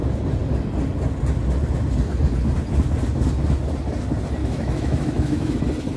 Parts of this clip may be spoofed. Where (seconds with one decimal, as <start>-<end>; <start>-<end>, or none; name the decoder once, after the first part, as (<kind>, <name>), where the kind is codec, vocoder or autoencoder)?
4.4-5.6 (autoencoder, DAC-VAE)